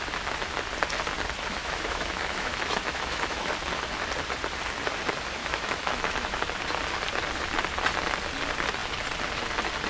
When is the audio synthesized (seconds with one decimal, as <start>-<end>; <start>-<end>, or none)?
1.6-3.5; 5.4-6.4